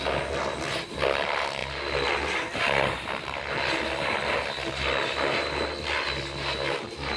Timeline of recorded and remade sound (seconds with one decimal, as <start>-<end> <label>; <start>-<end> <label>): 0.0-7.2 recorded